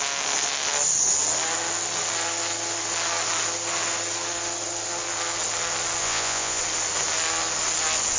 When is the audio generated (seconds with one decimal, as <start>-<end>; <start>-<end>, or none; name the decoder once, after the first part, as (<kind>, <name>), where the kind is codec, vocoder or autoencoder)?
6.0-6.6 (vocoder, Vocos)